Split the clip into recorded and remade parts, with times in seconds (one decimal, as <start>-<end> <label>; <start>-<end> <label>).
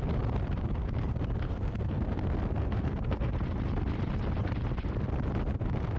0.0-1.5 recorded; 1.5-2.0 remade; 2.0-2.6 recorded; 2.6-3.3 remade; 3.3-6.0 recorded